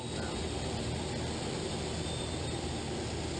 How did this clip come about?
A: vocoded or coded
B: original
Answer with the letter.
B